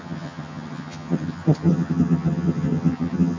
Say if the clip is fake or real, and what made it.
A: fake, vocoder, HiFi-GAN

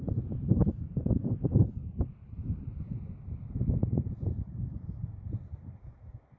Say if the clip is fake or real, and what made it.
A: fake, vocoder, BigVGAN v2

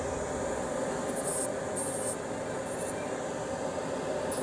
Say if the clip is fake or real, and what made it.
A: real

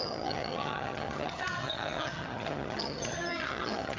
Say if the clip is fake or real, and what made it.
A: fake, vocoder, HiFi-GAN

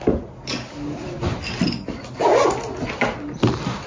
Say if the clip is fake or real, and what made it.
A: real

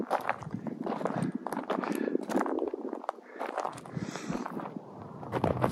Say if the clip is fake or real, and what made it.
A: real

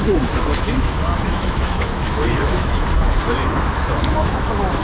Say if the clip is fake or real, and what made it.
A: fake, autoencoder, DAC-VAE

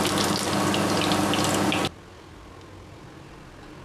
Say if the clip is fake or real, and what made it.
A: real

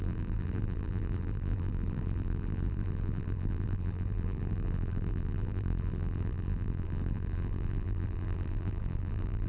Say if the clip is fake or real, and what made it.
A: fake, vocoder, BigVGAN v2